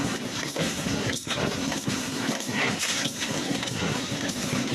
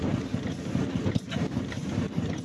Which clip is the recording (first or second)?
second